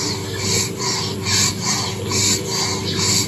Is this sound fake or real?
real